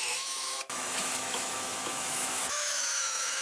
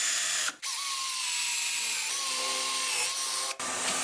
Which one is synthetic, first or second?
first